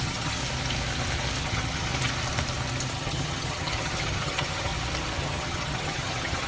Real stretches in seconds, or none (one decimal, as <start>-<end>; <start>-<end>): 0.4-1.4; 1.9-2.9; 4.7-5.2